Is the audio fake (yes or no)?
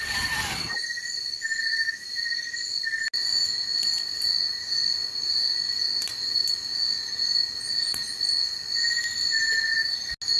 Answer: no